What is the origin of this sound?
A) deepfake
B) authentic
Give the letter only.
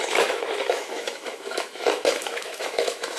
A